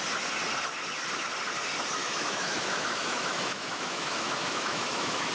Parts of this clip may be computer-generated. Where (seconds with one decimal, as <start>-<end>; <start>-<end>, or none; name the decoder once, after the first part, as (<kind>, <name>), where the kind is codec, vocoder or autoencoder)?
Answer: 2.0-5.3 (autoencoder, DAC-VAE)